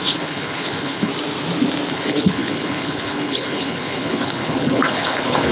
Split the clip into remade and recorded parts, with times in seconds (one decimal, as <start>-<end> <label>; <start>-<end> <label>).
0.0-1.1 remade; 1.1-1.9 recorded; 1.9-5.5 remade